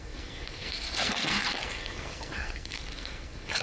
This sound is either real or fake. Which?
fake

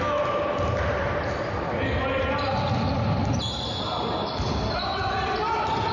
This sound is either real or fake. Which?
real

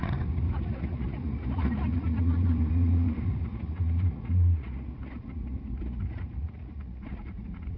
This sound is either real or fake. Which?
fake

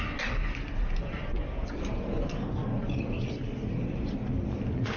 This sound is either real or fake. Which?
real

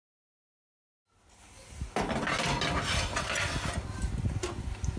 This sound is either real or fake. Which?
real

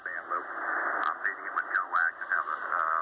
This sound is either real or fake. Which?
real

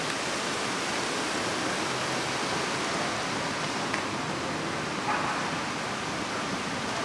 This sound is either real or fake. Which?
real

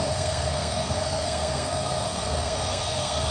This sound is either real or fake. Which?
fake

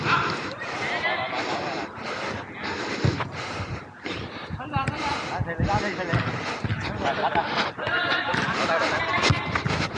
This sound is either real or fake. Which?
real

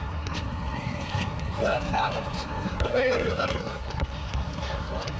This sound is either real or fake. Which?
fake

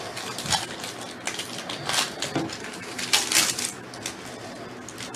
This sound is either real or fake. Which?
real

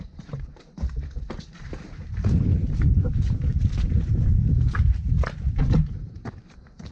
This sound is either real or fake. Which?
fake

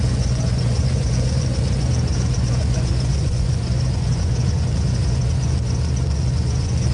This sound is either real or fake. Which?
fake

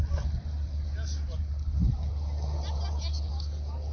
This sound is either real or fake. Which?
real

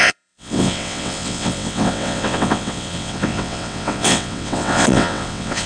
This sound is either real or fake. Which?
fake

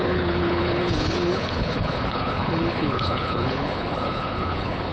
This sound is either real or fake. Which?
fake